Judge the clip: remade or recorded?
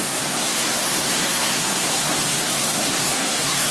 remade